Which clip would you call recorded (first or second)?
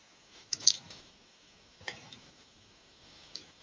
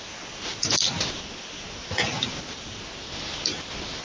second